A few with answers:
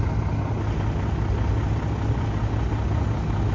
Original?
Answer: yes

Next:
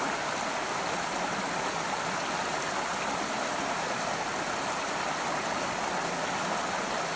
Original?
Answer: yes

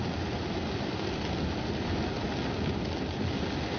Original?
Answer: yes